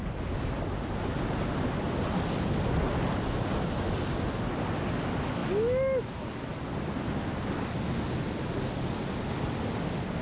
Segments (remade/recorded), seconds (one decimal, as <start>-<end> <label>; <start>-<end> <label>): 0.0-10.2 recorded